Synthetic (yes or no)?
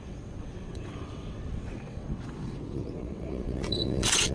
yes